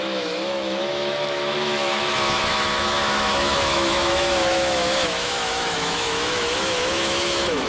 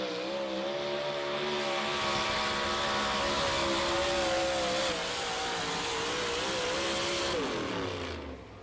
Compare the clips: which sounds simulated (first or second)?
first